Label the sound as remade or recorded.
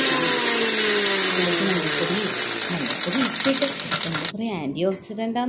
recorded